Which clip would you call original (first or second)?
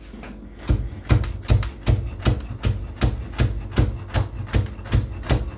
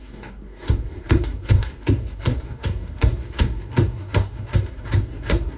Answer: first